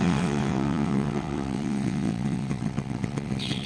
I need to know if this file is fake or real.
fake